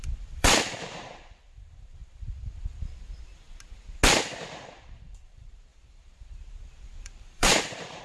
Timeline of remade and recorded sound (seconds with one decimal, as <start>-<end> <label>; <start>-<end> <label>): 0.0-2.0 remade; 2.0-4.5 recorded; 4.5-8.0 remade